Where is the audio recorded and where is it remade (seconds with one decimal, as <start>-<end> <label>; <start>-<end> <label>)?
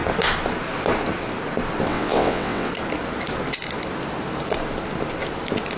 0.0-1.9 recorded; 1.9-2.7 remade; 2.7-5.8 recorded